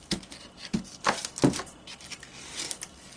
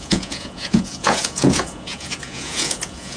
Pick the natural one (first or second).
first